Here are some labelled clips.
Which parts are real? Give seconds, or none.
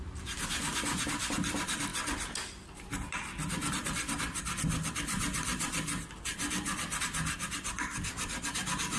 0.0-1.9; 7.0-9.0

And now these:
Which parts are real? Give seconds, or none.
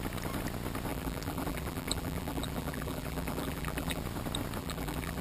0.0-0.9; 4.0-4.6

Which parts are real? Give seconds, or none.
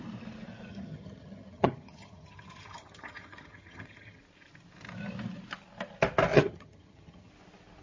0.0-0.7; 4.2-6.3; 7.3-7.8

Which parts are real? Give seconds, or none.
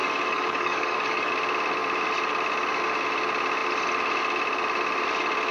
1.3-5.5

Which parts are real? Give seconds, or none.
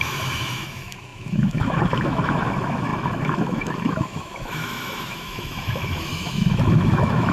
none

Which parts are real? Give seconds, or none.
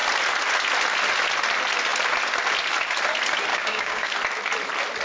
0.0-3.5; 4.1-5.0